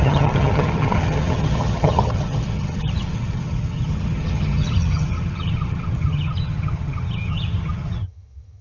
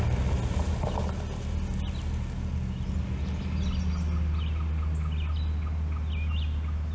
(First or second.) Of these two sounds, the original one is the second